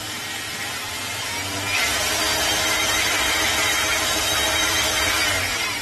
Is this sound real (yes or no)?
yes